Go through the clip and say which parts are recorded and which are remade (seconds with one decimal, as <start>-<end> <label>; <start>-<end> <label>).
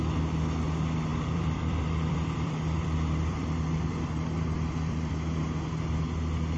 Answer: 0.0-1.1 recorded; 1.1-5.1 remade; 5.1-6.6 recorded